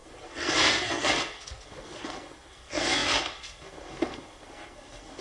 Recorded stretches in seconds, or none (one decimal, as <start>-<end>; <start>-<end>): none